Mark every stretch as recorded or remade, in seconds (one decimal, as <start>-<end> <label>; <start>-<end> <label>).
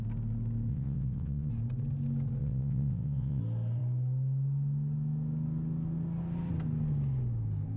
0.0-0.7 recorded; 0.7-1.5 remade; 1.5-2.4 recorded; 2.4-3.4 remade; 3.4-7.8 recorded